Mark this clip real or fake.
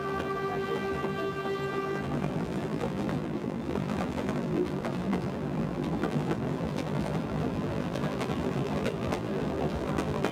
fake